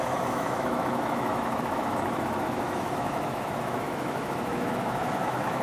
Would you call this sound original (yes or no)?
no